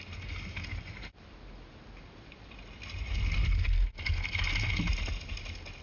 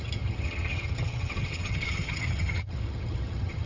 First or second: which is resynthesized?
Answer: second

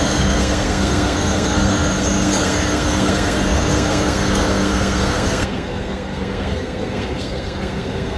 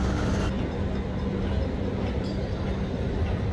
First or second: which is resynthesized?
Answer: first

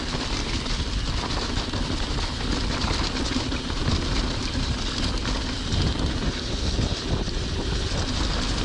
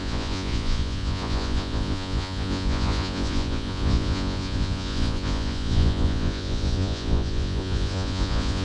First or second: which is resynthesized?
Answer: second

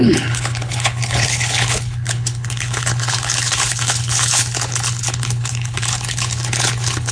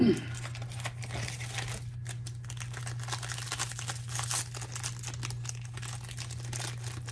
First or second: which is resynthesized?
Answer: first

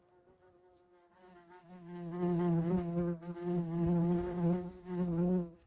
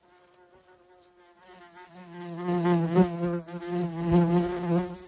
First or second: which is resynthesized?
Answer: first